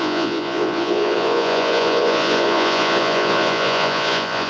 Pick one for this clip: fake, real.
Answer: fake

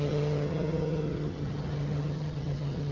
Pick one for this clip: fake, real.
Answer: fake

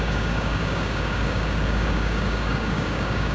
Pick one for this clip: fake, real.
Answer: fake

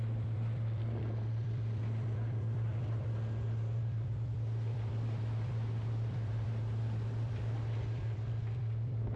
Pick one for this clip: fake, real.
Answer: fake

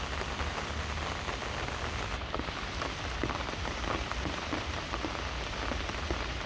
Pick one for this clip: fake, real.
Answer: real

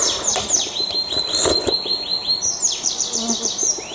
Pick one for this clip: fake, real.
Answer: real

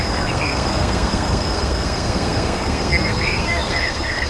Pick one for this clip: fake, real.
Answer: fake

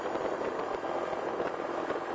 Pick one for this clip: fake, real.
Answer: real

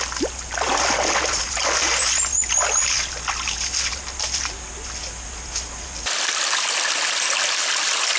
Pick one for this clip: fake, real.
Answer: real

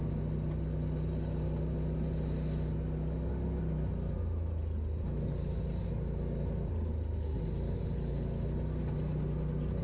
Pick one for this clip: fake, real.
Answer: real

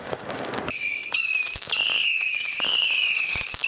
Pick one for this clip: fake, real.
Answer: fake